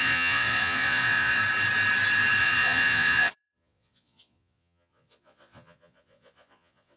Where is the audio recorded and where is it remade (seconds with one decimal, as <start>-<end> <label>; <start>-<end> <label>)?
0.0-1.4 remade; 1.4-2.4 recorded; 2.4-7.0 remade